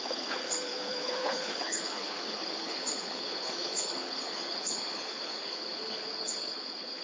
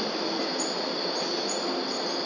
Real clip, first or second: second